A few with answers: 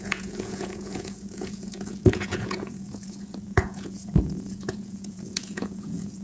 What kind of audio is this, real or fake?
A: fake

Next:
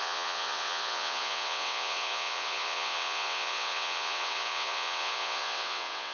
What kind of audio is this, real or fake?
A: fake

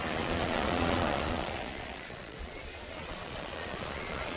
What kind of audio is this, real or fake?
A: fake